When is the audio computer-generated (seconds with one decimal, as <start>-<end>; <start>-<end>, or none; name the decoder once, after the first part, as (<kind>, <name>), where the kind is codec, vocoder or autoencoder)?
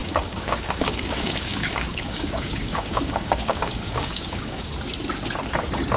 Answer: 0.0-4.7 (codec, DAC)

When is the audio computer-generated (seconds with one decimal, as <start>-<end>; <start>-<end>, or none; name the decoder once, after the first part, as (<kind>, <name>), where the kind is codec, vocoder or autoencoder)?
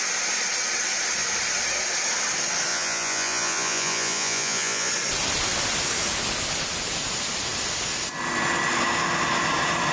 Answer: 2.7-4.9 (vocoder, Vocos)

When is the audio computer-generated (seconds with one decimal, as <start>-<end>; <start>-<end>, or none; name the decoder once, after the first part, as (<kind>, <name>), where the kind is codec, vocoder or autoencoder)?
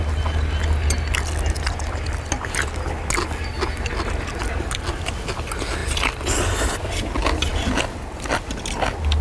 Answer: none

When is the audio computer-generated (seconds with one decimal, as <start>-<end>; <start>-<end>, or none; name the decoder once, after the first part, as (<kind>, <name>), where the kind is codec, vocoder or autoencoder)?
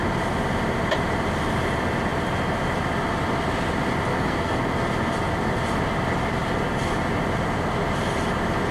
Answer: 4.1-4.6 (codec, SNAC)